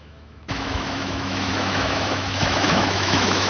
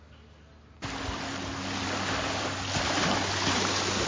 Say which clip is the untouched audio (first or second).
second